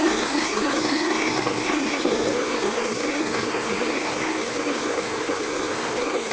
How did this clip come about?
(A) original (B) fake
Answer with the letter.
B